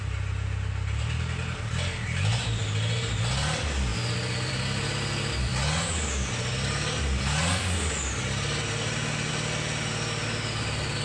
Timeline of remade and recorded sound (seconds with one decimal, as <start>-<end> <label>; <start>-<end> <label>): 0.0-11.0 recorded